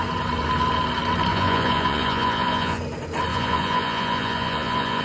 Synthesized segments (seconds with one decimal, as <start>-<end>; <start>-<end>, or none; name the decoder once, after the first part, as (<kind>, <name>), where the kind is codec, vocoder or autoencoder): 1.3-2.8 (vocoder, Vocos); 3.3-5.0